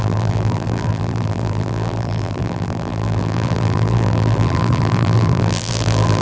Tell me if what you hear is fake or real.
fake